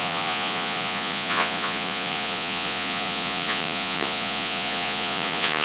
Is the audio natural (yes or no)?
no